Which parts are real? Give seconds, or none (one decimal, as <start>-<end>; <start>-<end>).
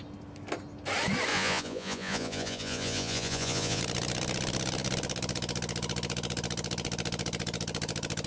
0.0-1.3; 3.8-8.3